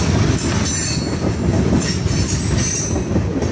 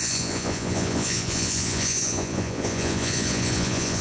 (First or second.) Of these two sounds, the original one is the first